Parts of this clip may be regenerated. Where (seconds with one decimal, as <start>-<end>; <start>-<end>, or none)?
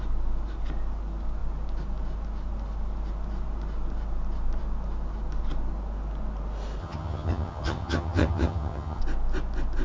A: 6.8-9.0